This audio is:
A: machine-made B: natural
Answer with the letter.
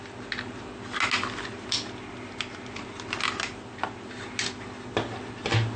B